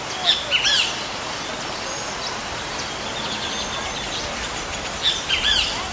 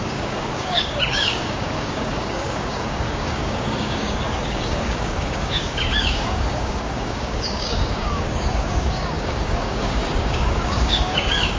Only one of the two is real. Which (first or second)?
first